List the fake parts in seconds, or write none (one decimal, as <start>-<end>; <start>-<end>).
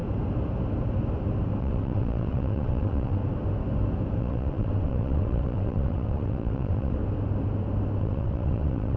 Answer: 1.6-3.2; 4.2-7.0; 8.0-9.0